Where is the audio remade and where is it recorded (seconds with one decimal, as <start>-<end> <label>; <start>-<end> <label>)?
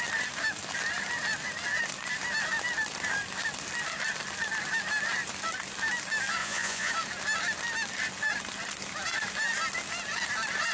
0.0-6.4 recorded; 6.4-6.9 remade; 6.9-10.7 recorded